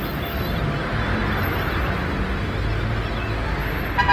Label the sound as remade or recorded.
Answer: recorded